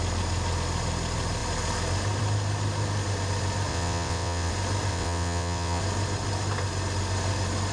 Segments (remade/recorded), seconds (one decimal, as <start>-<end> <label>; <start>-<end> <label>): 0.0-3.7 recorded; 3.7-4.5 remade; 4.5-4.9 recorded; 4.9-5.8 remade; 5.8-7.7 recorded